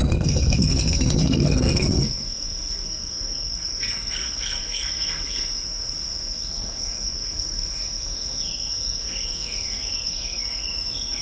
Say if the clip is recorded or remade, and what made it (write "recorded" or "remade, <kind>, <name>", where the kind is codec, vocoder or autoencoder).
remade, codec, SNAC